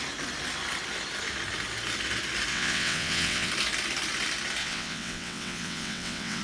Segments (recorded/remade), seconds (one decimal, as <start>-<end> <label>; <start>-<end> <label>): 0.0-2.5 recorded; 2.5-3.5 remade; 3.5-4.6 recorded; 4.6-6.4 remade